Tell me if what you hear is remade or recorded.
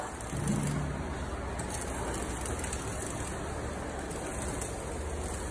recorded